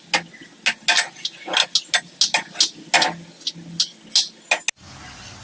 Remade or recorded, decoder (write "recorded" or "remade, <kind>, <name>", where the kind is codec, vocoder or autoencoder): recorded